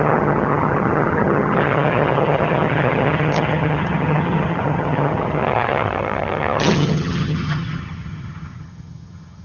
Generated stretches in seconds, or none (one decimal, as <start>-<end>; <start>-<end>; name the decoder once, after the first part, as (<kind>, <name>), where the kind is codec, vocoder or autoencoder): 0.0-9.4 (vocoder, HiFi-GAN)